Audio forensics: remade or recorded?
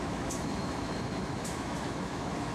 remade